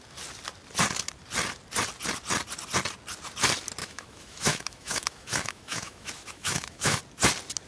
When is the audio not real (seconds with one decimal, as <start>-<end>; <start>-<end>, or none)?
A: 3.8-7.0